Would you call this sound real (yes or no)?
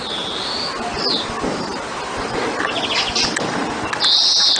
yes